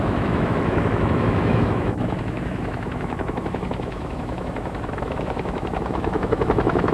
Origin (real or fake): fake